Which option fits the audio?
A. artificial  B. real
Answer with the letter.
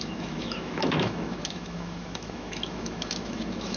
A